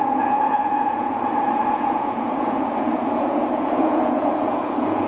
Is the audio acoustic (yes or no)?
no